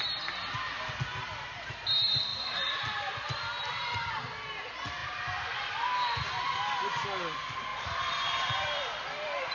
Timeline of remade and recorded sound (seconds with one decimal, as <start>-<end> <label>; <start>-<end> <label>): 0.0-2.3 recorded; 2.3-4.2 remade; 4.2-5.0 recorded; 5.0-5.7 remade; 5.7-7.7 recorded; 7.7-9.5 remade